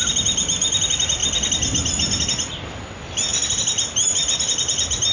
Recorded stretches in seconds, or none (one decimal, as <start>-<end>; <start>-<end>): 0.0-5.1